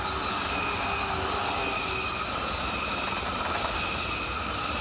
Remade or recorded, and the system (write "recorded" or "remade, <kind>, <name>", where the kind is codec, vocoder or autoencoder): recorded